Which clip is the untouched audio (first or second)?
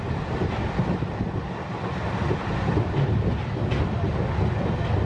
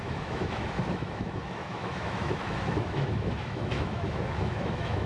first